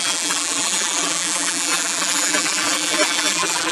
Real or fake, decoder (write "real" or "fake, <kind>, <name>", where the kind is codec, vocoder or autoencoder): fake, vocoder, BigVGAN v2